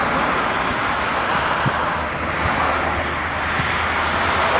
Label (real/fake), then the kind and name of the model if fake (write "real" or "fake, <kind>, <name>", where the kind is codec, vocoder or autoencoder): real